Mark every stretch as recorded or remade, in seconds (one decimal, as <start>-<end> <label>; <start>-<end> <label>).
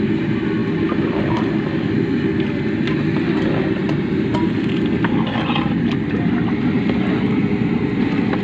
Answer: 0.0-0.6 recorded; 0.6-1.3 remade; 1.3-8.4 recorded